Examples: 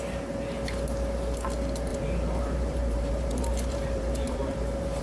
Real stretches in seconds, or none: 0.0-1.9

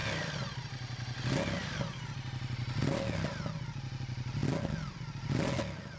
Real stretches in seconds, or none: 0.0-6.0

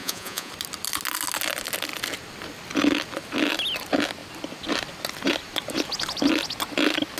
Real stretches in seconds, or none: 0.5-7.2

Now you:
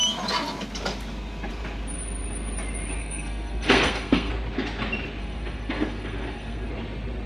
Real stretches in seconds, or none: 0.0-3.0; 4.3-5.2; 6.7-7.3

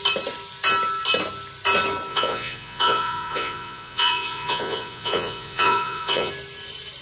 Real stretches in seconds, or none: 0.0-2.1; 6.3-7.0